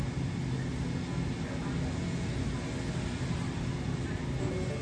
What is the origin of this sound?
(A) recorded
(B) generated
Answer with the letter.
A